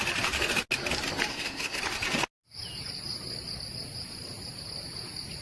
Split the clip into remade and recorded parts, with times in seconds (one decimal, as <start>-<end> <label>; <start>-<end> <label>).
0.0-1.3 recorded; 1.3-1.8 remade; 1.8-5.4 recorded